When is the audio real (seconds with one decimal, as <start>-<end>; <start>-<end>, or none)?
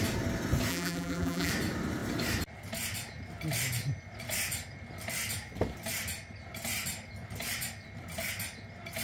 0.0-0.7; 1.5-9.0